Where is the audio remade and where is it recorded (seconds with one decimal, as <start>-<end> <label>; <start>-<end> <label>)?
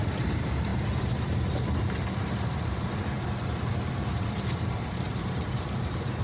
0.0-6.2 remade